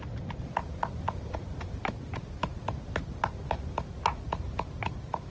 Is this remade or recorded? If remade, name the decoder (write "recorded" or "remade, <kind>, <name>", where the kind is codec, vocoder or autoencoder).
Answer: recorded